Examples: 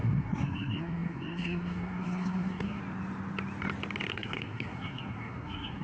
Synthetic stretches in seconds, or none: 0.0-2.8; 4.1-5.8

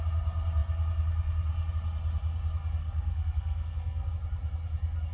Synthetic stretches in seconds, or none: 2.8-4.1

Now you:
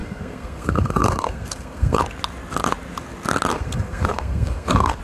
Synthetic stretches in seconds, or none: 0.0-2.0; 3.5-5.0